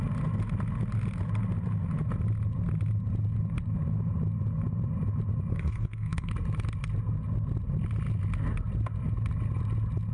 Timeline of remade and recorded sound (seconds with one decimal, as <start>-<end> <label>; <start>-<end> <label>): 0.0-5.5 recorded; 5.5-6.3 remade; 6.3-10.1 recorded